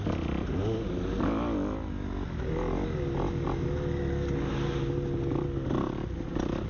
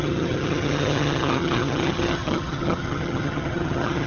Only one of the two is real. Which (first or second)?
first